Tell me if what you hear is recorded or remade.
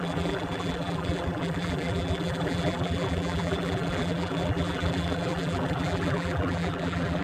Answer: remade